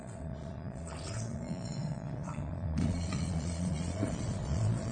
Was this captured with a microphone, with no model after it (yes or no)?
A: no